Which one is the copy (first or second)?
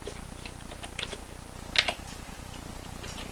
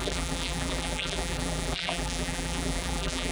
second